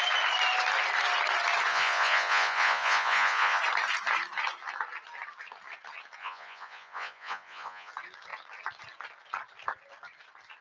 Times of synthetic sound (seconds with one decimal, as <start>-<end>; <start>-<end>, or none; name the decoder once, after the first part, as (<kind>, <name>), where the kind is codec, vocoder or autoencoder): 1.7-3.6 (vocoder, Vocos); 6.2-7.9